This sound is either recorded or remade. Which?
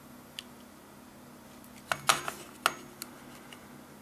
recorded